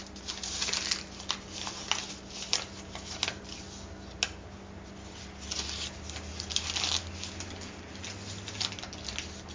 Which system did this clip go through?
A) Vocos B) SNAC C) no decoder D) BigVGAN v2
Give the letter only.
C